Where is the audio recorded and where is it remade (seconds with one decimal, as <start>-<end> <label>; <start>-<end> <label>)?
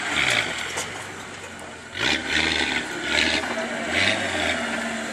0.0-2.2 recorded; 2.2-3.4 remade; 3.4-5.1 recorded